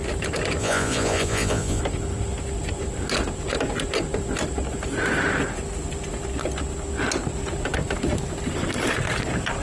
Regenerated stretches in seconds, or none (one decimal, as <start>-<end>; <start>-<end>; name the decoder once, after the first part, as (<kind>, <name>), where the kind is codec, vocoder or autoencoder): 0.6-1.8 (vocoder, Vocos)